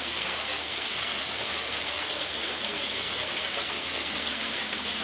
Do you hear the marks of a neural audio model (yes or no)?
yes